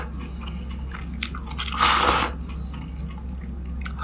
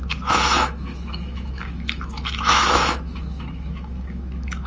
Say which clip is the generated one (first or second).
second